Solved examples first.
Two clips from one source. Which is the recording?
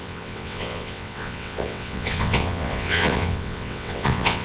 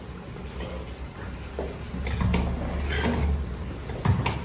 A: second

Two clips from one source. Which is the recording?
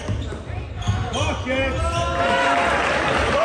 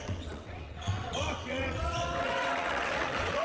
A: first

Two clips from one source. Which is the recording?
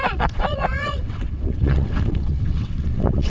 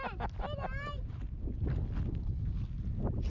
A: second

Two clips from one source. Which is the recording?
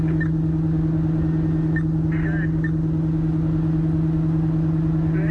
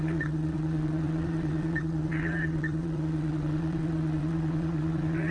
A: first